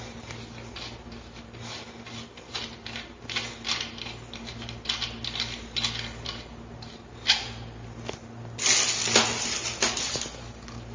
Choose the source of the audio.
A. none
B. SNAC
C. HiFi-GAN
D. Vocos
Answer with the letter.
A